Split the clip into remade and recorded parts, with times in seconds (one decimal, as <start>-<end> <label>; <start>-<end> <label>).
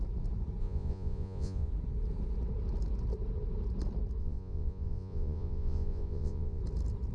0.0-0.6 recorded; 0.6-1.7 remade; 1.7-4.2 recorded; 4.2-6.6 remade; 6.6-7.1 recorded